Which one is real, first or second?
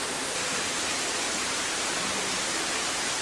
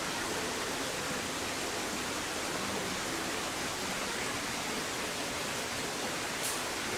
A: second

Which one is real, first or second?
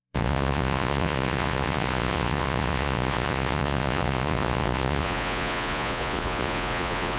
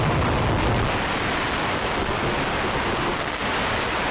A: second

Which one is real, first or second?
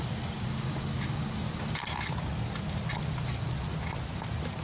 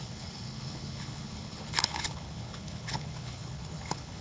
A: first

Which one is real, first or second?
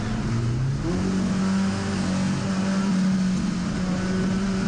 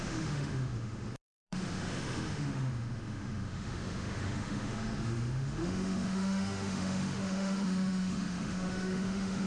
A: first